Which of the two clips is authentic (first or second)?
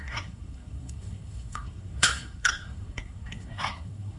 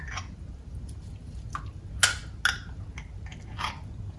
second